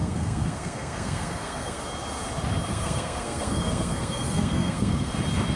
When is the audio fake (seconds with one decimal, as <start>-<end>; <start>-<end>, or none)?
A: 0.0-1.8; 2.7-5.1